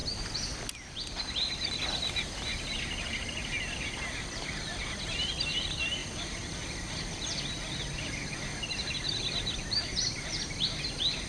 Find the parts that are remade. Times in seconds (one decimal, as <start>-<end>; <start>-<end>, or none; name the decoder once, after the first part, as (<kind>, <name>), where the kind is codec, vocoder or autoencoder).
none